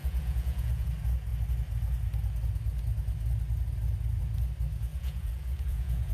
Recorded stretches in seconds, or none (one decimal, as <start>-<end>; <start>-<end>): 0.9-4.9